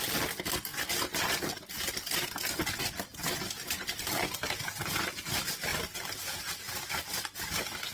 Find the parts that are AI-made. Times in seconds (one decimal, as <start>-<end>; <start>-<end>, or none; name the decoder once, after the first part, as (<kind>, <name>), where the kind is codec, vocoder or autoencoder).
none